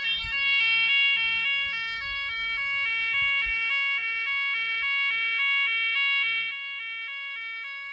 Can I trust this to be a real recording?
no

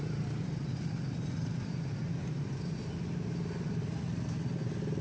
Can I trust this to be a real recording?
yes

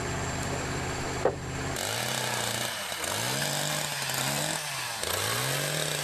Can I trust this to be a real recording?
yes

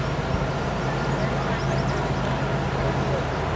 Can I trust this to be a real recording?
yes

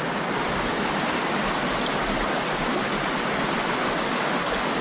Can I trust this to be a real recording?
yes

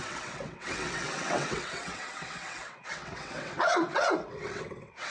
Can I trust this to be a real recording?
no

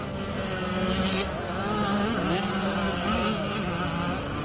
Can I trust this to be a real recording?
yes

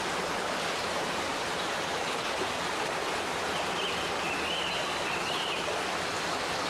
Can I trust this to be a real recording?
yes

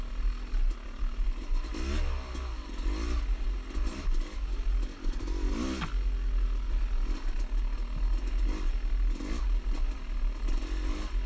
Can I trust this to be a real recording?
yes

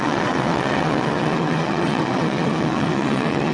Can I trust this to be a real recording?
no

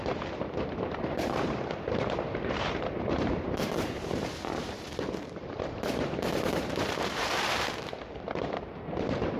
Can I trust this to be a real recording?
no